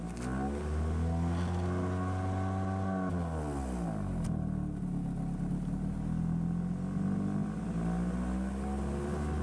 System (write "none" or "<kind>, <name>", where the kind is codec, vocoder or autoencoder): none